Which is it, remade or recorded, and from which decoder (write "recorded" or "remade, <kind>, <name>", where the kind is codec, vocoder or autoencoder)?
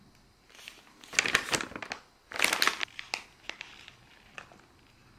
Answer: recorded